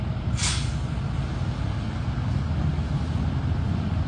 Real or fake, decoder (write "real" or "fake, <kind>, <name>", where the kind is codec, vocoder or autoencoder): real